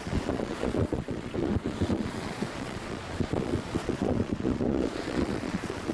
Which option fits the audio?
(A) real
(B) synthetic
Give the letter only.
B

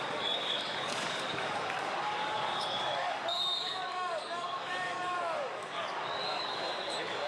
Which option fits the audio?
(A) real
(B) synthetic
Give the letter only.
B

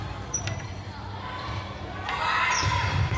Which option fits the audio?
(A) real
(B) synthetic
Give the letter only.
B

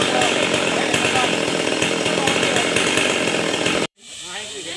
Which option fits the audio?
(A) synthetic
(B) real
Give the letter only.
A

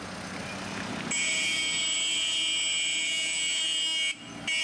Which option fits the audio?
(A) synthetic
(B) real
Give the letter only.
B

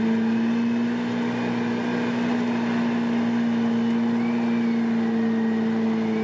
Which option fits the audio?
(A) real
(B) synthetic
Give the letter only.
A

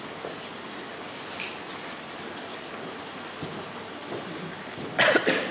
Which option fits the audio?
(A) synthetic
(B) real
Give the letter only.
B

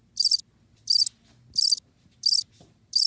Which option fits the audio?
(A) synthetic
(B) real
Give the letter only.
B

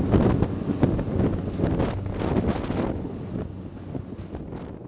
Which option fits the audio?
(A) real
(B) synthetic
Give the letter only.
A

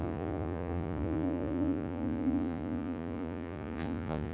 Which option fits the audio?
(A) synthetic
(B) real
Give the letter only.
A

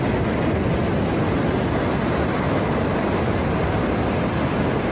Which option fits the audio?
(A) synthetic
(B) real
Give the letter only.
B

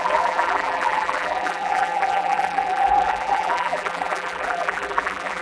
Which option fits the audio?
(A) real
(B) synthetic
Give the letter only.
B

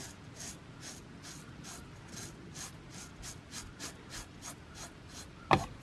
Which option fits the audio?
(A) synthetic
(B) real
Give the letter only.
B